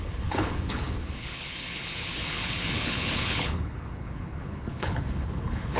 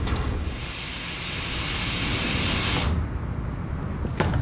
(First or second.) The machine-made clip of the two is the first